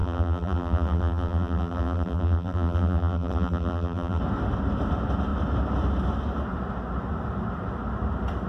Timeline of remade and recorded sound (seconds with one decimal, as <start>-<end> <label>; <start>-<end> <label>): 0.0-4.2 remade; 4.2-8.5 recorded